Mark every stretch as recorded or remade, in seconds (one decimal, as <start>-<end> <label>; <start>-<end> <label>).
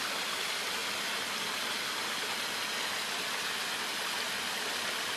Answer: 0.0-5.2 recorded